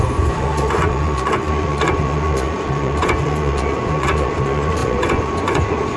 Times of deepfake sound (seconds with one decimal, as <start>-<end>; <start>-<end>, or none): 0.0-6.0